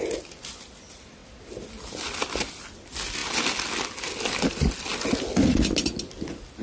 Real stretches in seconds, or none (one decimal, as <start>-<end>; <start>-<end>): 0.0-6.6